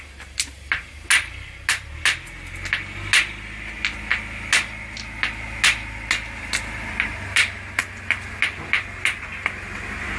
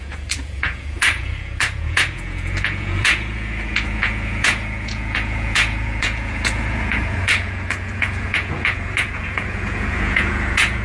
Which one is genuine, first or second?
first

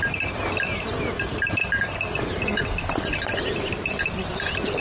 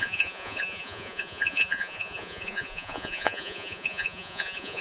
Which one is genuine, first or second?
first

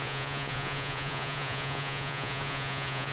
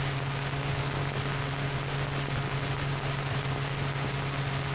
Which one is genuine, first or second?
second